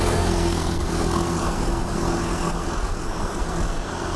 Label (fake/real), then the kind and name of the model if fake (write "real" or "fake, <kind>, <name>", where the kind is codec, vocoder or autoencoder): fake, codec, SNAC